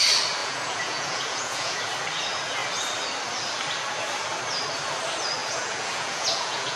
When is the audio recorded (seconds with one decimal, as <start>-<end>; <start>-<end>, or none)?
0.0-0.4; 1.8-5.4